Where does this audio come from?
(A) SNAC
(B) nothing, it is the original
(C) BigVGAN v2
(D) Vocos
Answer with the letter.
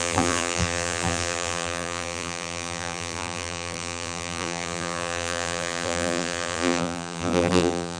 C